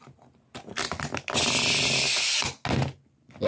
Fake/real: real